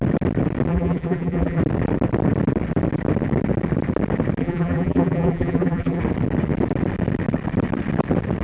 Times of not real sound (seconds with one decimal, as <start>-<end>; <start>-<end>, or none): 0.7-1.6; 4.4-6.0